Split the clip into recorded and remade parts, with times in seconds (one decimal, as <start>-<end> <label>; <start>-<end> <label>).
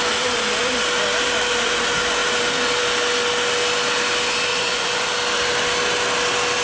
0.0-4.5 recorded; 4.5-5.1 remade; 5.1-6.6 recorded